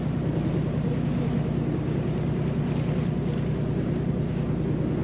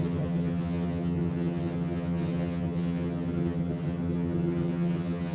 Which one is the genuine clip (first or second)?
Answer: first